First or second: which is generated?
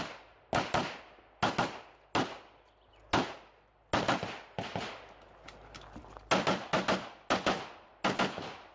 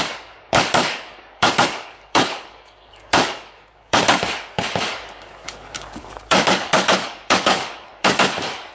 second